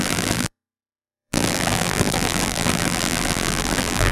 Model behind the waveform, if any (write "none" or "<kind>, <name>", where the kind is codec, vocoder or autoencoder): vocoder, BigVGAN v2